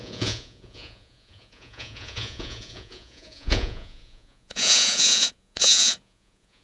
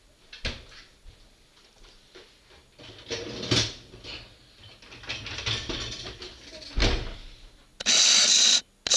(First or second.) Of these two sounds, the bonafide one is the second